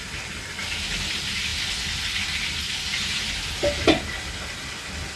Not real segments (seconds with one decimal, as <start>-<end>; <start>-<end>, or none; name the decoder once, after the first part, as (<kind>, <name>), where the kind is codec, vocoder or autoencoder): none